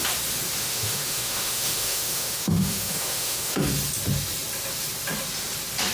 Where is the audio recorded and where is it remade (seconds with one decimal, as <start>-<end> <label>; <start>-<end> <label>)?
0.0-0.6 recorded; 0.6-3.7 remade; 3.7-5.9 recorded